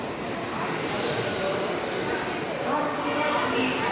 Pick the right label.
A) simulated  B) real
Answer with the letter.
B